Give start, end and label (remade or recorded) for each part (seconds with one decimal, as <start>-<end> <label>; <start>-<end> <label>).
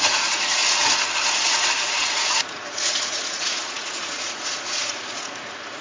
0.0-0.6 remade; 0.6-1.2 recorded; 1.2-5.8 remade